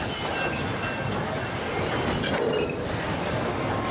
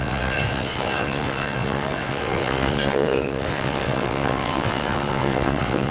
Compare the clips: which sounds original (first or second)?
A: first